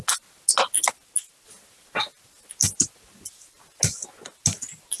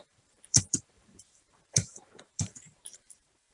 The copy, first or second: second